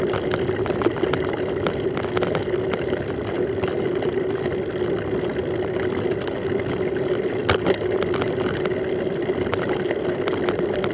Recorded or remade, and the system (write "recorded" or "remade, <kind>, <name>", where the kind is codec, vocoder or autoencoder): recorded